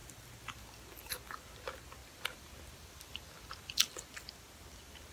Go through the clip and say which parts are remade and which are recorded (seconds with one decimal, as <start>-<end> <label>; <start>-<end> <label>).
0.0-2.0 recorded; 2.0-4.0 remade; 4.0-5.1 recorded